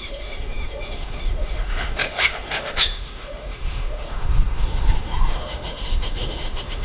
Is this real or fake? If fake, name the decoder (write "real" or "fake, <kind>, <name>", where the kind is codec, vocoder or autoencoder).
fake, autoencoder, DAC-VAE